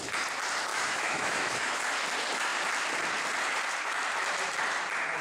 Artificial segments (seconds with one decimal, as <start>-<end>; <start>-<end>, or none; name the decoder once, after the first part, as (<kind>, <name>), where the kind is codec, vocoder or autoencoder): 0.7-1.8 (autoencoder, DAC-VAE)